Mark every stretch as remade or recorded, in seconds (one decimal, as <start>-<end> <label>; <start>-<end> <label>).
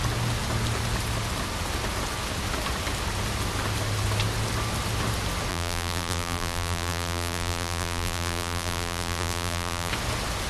0.0-5.5 recorded; 5.5-9.9 remade; 9.9-10.5 recorded